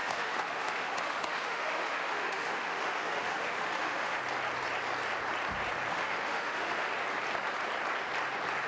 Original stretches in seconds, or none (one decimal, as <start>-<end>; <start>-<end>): 4.2-5.9; 6.9-8.7